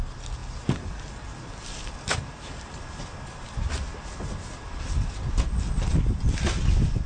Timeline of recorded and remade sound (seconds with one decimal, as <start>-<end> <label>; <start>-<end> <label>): 0.0-7.1 recorded